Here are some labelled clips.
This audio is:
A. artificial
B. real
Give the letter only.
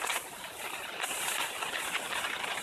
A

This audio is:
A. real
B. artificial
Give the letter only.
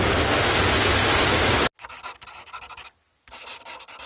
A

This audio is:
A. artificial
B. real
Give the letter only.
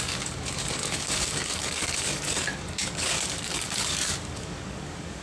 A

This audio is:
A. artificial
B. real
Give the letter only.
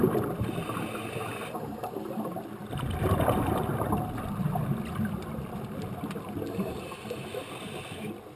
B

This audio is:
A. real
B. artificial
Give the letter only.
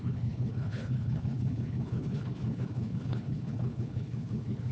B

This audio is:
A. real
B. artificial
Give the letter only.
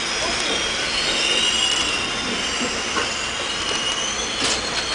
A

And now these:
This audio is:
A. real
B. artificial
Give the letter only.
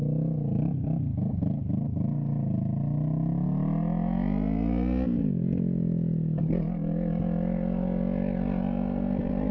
A